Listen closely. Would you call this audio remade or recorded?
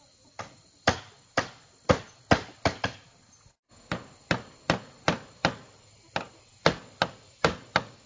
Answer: recorded